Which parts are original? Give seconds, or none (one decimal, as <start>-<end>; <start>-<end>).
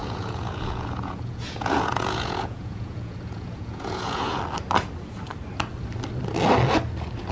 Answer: 4.4-7.3